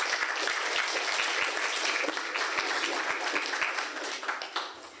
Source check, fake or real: real